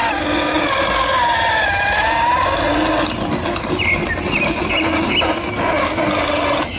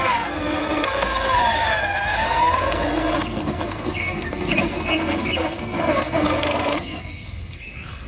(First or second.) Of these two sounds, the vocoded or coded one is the second